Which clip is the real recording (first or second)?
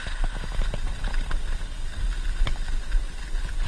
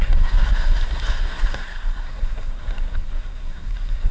first